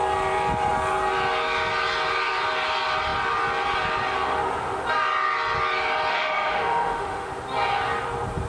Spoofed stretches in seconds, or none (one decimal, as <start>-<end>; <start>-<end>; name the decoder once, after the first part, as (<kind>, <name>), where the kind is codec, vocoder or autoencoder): 6.1-7.3 (autoencoder, DAC-VAE)